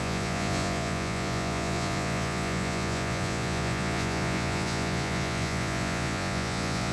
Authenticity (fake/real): fake